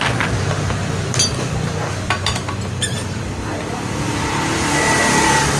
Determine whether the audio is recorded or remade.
recorded